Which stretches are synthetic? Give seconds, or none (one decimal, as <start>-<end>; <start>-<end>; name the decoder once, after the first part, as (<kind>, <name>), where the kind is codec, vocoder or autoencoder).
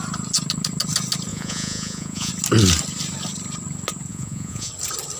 1.3-2.3 (vocoder, Vocos); 4.1-4.7